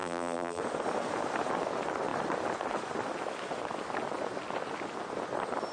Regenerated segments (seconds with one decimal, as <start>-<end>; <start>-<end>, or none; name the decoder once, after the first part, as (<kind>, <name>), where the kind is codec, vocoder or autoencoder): 0.0-0.6 (vocoder, BigVGAN v2)